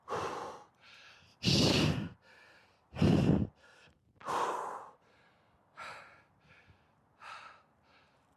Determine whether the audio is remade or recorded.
recorded